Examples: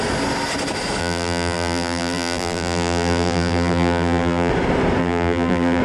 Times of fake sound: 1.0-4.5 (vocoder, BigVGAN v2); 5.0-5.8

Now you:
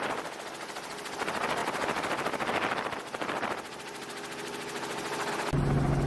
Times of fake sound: none